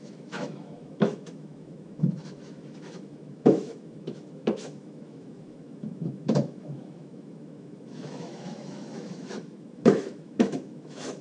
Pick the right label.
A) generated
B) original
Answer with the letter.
A